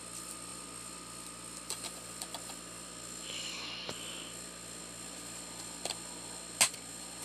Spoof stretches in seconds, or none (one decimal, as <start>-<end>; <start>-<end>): none